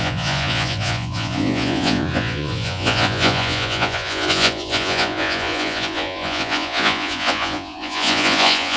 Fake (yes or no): yes